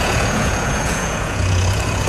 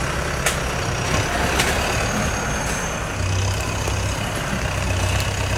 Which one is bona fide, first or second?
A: second